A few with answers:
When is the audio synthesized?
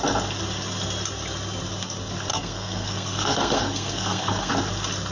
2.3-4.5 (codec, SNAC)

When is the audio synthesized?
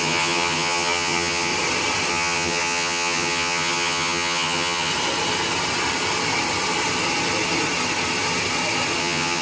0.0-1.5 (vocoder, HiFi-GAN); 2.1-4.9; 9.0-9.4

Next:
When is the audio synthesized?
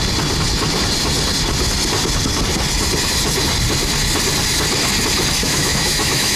5.4-6.4 (autoencoder, DAC-VAE)